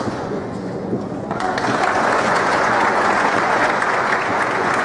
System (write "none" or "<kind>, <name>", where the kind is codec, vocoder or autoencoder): vocoder, Vocos